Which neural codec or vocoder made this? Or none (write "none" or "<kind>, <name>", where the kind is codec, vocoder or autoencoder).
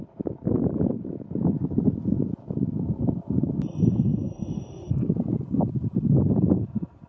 vocoder, BigVGAN v2